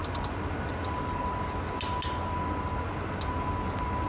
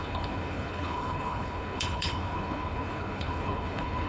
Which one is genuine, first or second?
first